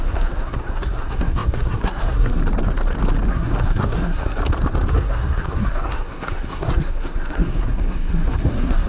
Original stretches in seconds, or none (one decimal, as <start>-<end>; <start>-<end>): 2.4-3.3; 4.4-4.9

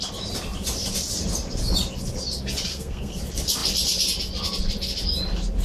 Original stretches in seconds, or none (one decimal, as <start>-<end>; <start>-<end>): 0.0-2.7; 3.2-5.6

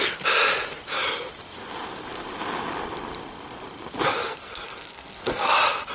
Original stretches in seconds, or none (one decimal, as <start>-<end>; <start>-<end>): 0.0-4.2; 5.5-5.9

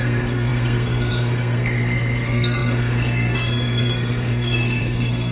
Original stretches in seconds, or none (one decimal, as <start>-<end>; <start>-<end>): none